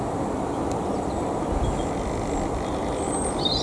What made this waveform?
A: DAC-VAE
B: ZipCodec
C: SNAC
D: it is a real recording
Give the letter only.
D